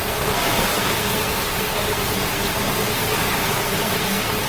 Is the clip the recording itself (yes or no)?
no